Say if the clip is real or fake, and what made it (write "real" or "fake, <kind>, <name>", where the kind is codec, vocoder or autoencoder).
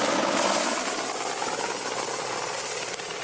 real